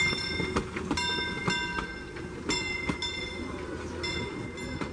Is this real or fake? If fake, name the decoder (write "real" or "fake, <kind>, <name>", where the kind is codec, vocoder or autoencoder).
real